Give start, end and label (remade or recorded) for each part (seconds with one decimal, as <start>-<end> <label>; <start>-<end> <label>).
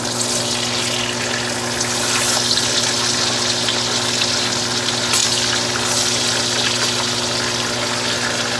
0.0-8.6 recorded